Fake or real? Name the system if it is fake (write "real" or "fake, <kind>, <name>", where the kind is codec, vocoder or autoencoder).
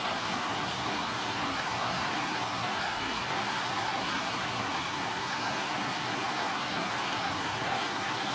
fake, codec, SNAC